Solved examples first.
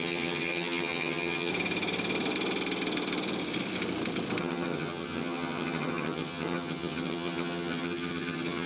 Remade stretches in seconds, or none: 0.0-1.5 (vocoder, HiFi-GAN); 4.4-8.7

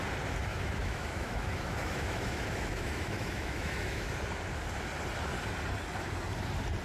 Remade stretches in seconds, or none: 0.5-4.1 (autoencoder, DAC-VAE)

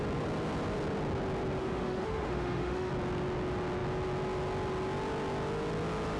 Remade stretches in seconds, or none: 1.6-2.9 (autoencoder, DAC-VAE)

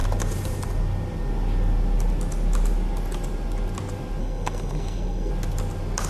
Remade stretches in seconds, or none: 4.2-5.3 (codec, SNAC)